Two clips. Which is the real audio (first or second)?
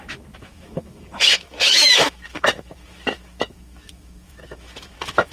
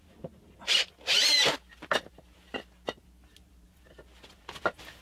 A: second